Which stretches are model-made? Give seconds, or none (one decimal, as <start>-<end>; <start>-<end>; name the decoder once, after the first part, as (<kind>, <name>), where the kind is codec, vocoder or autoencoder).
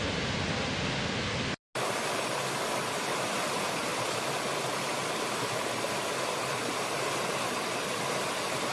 none